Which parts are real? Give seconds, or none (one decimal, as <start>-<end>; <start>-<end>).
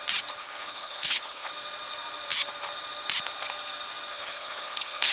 0.0-0.4; 1.5-4.1